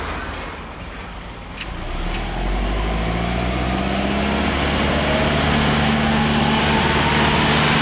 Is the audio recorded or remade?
recorded